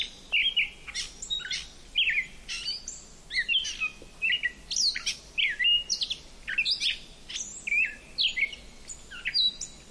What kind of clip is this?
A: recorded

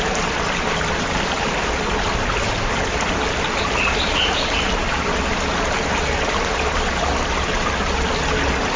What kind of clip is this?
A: recorded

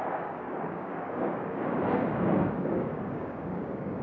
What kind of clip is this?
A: remade